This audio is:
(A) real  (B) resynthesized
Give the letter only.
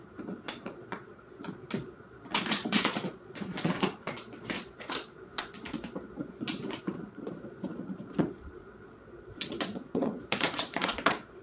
B